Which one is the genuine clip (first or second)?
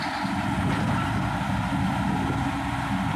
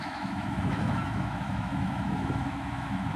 first